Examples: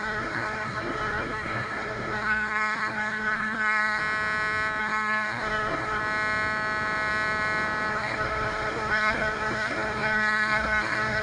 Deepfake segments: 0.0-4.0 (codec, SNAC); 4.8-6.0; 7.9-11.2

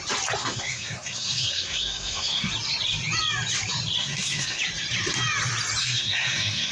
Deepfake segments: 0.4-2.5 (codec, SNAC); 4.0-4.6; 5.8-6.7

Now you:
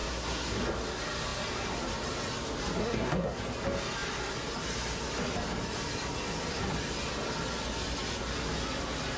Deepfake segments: 0.0-0.6 (codec, SNAC); 2.8-3.4